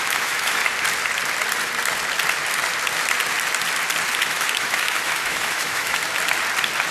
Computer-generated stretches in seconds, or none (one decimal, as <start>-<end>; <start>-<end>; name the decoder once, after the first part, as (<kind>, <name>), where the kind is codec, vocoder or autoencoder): 0.0-0.6 (autoencoder, DAC-VAE); 4.2-6.0